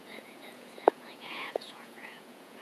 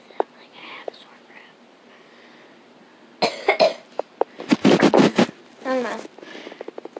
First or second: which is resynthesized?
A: first